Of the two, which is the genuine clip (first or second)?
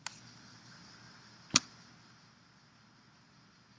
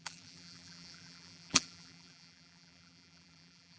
first